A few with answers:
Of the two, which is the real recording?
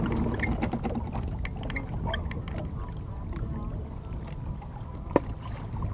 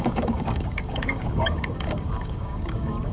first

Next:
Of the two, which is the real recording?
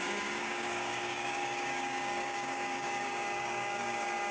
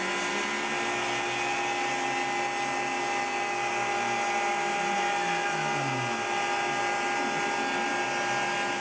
second